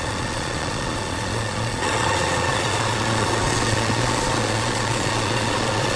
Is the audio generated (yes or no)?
yes